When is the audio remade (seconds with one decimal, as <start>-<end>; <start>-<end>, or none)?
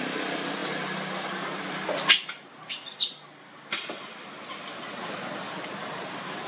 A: none